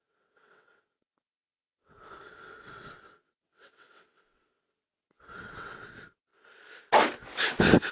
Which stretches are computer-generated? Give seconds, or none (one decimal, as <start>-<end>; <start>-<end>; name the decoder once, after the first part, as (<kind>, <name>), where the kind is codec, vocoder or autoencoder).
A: 0.0-6.3 (vocoder, WaveNeXt)